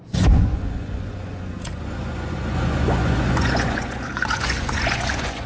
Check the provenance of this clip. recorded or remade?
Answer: remade